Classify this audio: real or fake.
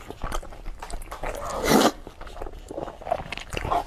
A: real